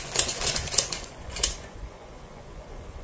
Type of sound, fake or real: fake